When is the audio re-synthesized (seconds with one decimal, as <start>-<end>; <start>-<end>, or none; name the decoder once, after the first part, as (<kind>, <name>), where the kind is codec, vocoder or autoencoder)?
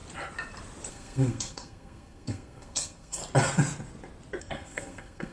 0.9-3.2 (codec, SNAC); 4.4-5.3